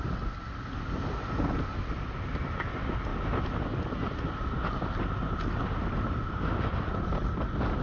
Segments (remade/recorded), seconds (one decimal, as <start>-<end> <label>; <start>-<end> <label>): 0.0-7.8 recorded